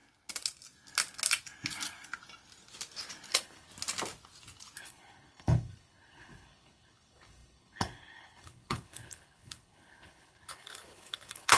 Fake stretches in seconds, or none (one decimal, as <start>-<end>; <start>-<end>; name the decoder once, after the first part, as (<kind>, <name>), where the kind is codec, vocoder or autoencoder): 3.3-3.7 (codec, HILCodec); 4.8-11.6